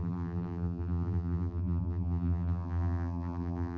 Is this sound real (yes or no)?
no